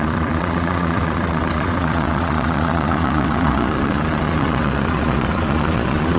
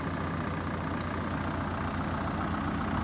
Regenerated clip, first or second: first